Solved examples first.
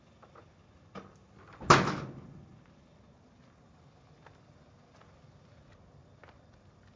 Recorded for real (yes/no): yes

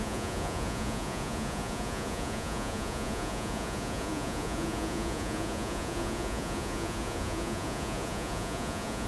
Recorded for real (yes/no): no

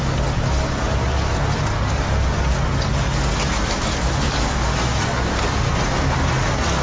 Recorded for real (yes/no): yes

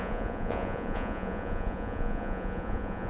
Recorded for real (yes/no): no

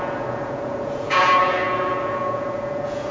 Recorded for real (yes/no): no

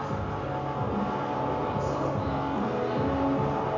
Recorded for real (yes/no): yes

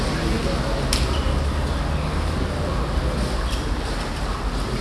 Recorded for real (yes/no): yes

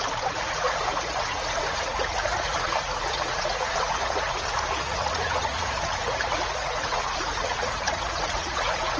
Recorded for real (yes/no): no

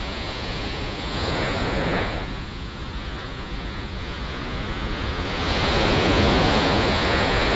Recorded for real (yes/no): no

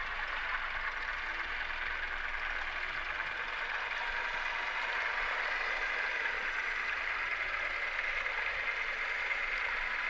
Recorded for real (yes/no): yes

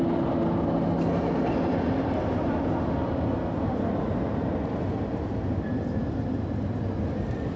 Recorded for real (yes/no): yes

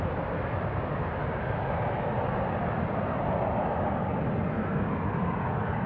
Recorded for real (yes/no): yes